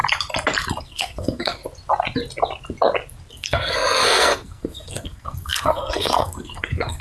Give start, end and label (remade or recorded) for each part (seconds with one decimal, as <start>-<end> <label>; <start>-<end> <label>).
0.0-0.8 recorded; 0.8-1.6 remade; 1.6-3.3 recorded; 3.3-7.0 remade